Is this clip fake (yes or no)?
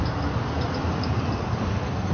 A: no